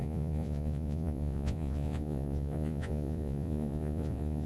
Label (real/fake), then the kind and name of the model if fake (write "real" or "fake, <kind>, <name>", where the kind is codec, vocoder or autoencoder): fake, vocoder, Vocos